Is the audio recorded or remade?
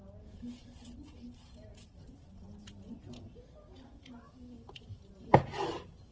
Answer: recorded